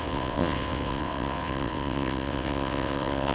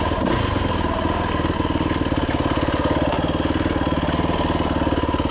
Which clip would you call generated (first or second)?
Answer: first